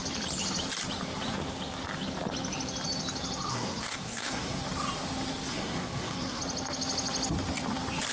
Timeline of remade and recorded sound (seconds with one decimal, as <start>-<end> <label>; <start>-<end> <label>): 0.0-3.5 recorded; 3.5-4.6 remade; 4.6-5.5 recorded; 5.5-6.4 remade; 6.4-8.1 recorded